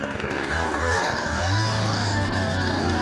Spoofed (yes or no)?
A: yes